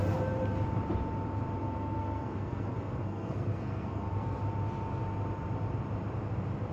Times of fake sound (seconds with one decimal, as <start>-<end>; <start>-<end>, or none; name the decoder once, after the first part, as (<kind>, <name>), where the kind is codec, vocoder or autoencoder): 1.6-4.4 (codec, SNAC)